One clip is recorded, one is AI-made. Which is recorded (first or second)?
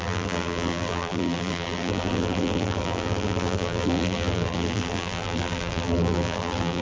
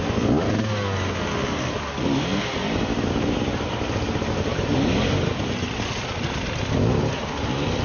second